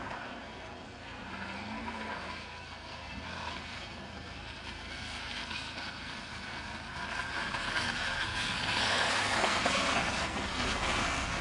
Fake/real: fake